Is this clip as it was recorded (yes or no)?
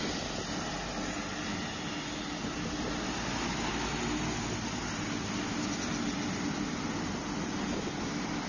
yes